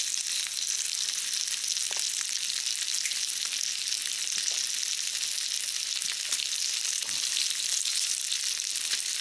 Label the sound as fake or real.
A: real